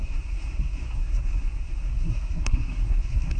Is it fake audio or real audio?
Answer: fake